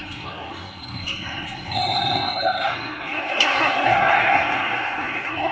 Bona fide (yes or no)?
no